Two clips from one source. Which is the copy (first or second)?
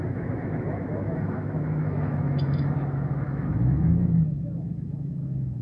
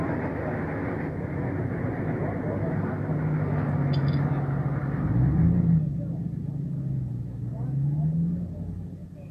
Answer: first